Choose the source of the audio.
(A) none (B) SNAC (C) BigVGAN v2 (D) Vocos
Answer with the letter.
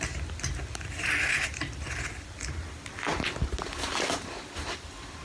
A